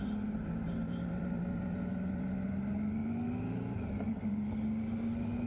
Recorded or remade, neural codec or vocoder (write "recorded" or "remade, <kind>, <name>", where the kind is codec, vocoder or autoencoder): recorded